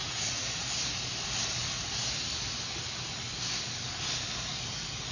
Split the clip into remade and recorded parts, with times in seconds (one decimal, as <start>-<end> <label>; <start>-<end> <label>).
0.0-0.6 remade; 0.6-5.1 recorded